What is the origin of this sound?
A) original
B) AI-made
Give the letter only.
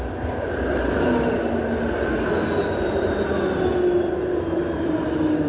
A